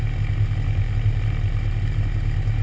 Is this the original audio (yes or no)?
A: yes